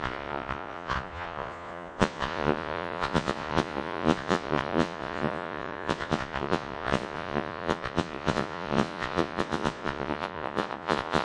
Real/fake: fake